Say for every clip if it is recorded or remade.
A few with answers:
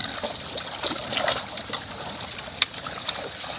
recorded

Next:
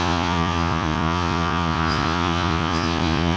remade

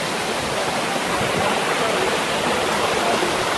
recorded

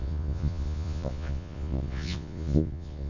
remade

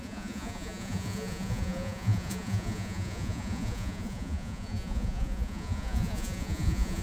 remade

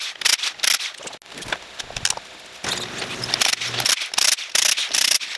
recorded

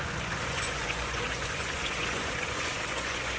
remade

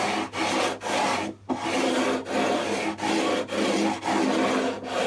recorded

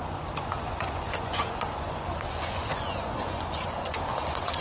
remade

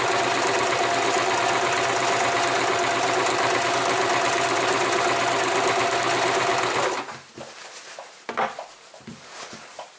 recorded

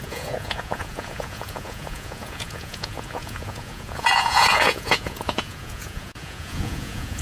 remade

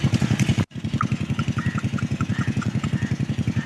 remade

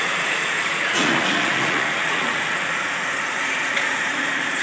remade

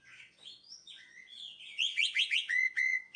remade